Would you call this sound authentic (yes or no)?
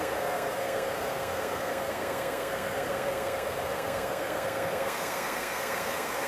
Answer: no